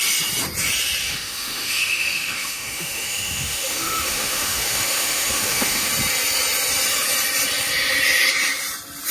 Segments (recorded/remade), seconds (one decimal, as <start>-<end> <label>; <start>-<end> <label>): 0.0-1.0 recorded; 1.0-5.9 remade; 5.9-9.1 recorded